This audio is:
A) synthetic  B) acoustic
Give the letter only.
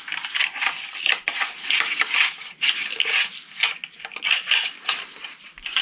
B